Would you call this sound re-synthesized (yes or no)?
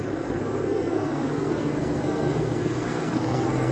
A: yes